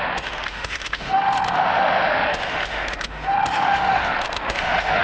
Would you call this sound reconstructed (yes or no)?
yes